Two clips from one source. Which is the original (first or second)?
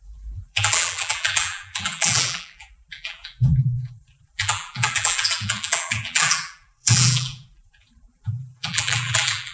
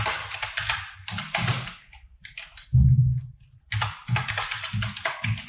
second